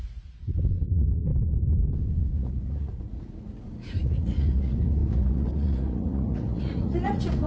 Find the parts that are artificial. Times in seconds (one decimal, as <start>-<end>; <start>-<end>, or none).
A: 0.0-1.3; 2.2-7.5